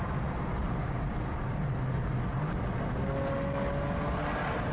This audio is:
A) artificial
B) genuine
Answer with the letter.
B